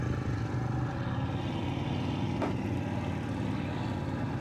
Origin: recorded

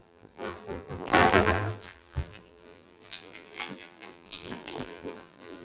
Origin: remade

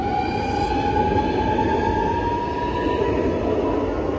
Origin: recorded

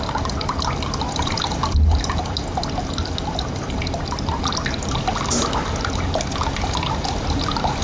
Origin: recorded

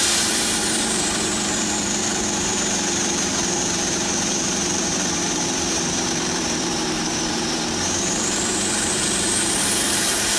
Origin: remade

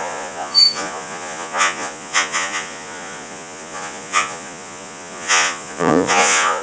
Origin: remade